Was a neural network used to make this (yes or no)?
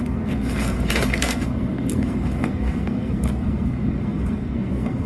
yes